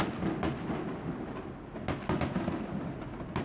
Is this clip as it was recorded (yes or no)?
yes